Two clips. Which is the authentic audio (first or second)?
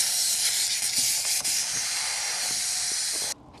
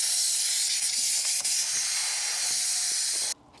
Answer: second